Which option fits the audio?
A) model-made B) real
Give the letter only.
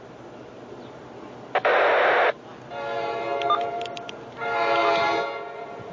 B